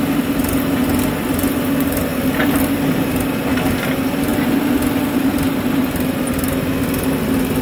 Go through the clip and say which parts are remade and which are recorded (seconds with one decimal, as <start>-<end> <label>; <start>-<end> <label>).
0.0-7.6 recorded